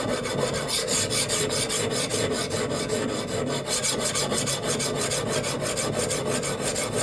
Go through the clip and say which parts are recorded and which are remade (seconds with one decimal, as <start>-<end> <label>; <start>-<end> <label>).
0.0-7.0 recorded